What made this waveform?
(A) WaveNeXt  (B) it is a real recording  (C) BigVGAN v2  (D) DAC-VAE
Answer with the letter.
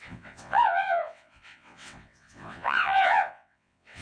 A